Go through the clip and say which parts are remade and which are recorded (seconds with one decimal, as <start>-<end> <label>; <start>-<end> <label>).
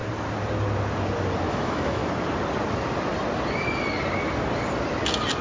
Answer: 0.0-1.5 recorded; 1.5-2.0 remade; 2.0-5.4 recorded